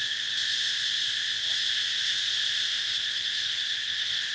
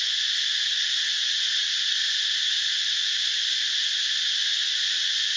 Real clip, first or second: second